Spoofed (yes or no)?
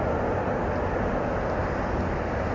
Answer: no